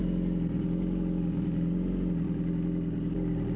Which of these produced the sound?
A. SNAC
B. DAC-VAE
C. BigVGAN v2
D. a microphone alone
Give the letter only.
D